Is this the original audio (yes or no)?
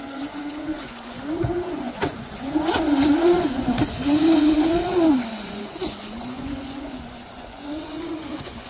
no